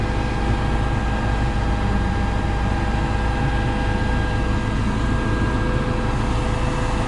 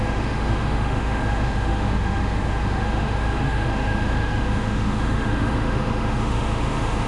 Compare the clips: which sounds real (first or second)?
first